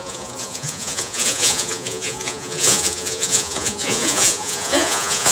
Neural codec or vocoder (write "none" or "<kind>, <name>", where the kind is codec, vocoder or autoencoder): vocoder, Vocos